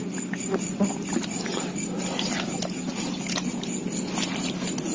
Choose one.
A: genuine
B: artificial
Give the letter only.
A